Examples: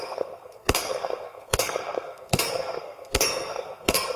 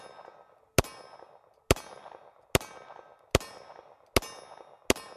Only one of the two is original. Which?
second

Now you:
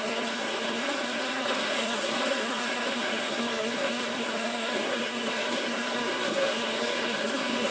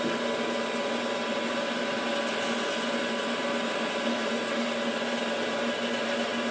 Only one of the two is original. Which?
second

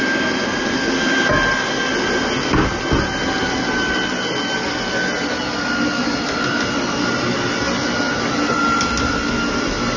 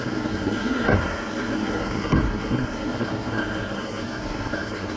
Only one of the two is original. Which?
first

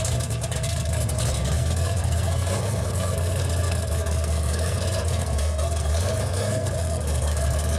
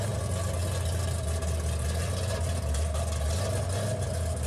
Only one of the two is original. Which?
second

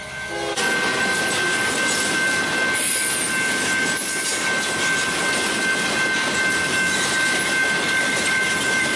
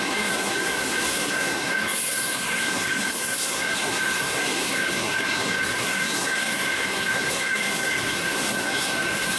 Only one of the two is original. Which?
first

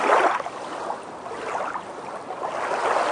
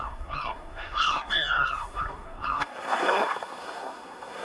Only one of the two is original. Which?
first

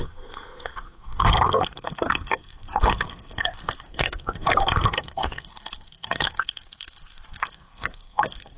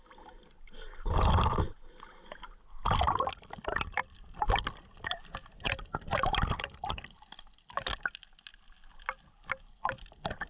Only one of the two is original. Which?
second